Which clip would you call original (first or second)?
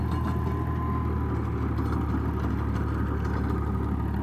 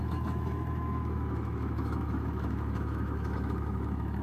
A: first